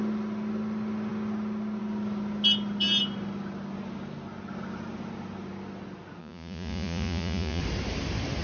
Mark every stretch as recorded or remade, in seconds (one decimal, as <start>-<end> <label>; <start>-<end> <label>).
0.0-6.2 recorded; 6.2-7.6 remade; 7.6-8.4 recorded